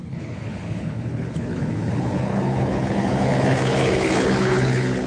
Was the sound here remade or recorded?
remade